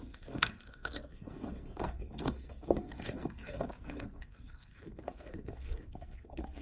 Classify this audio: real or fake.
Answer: fake